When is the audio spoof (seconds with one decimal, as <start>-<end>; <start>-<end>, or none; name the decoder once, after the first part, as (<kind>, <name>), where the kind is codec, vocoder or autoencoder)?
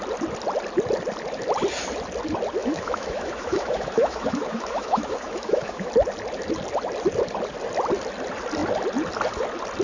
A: 2.6-5.9 (autoencoder, DAC-VAE)